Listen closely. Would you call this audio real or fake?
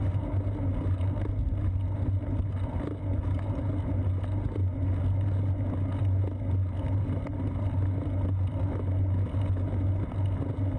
real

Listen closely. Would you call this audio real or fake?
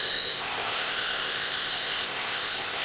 fake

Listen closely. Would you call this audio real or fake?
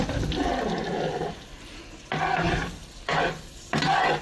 real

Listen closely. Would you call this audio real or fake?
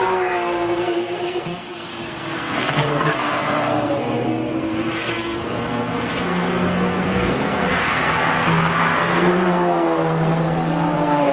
fake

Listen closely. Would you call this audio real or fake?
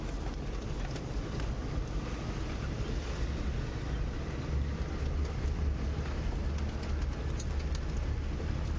real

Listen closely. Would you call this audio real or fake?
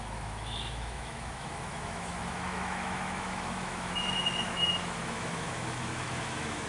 fake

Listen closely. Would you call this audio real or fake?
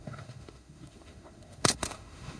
fake